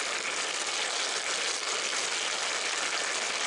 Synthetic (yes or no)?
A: no